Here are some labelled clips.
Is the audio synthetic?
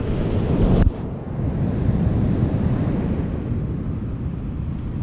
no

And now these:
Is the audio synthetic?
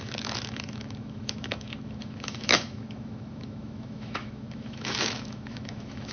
yes